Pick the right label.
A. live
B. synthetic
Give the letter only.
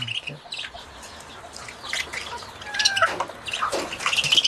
A